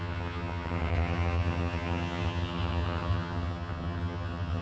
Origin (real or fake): fake